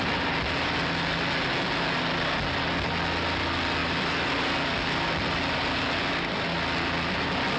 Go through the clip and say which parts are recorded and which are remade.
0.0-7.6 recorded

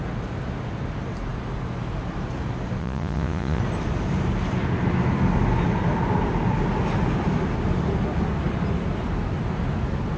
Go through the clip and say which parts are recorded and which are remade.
0.0-2.8 recorded; 2.8-3.6 remade; 3.6-10.2 recorded

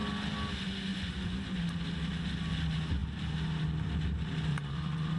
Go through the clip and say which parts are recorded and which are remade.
0.0-0.9 recorded; 0.9-1.6 remade; 1.6-4.5 recorded; 4.5-5.2 remade

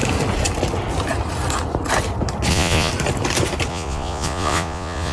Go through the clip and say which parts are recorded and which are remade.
0.0-2.5 recorded; 2.5-2.9 remade; 2.9-3.7 recorded; 3.7-5.1 remade

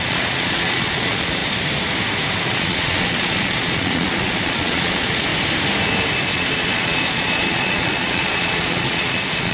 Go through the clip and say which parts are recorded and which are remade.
0.0-1.4 remade; 1.4-2.4 recorded; 2.4-5.3 remade; 5.3-6.3 recorded; 6.3-9.5 remade

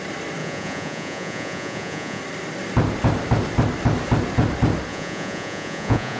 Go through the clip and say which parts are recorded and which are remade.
0.0-0.4 recorded; 0.4-2.2 remade; 2.2-4.9 recorded; 4.9-6.2 remade

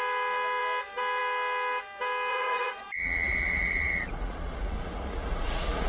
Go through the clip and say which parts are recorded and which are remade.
0.0-2.3 recorded; 2.3-5.9 remade